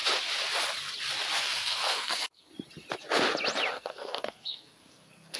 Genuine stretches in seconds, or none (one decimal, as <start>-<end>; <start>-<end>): 0.0-1.4; 2.5-3.7